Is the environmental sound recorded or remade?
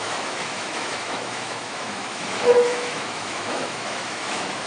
remade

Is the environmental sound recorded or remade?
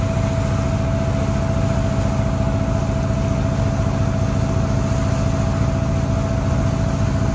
recorded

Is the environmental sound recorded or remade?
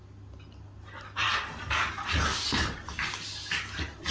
recorded